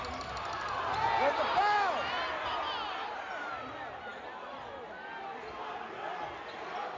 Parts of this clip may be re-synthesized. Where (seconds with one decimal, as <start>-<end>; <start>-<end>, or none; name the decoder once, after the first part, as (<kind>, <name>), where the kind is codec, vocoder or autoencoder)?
none